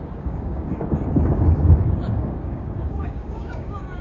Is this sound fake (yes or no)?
yes